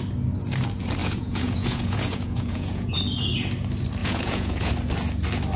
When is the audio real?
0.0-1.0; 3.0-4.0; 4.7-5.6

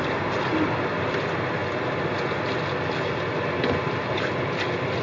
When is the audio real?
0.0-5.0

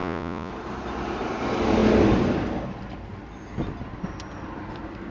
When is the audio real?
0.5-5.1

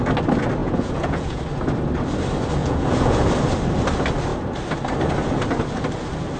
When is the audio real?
0.0-0.6; 1.4-2.6; 3.3-6.4

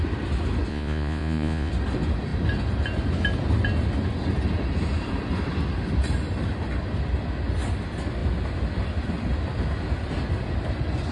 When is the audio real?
0.0-0.7; 1.7-11.1

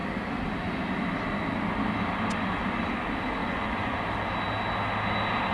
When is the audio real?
0.0-3.4; 4.0-5.5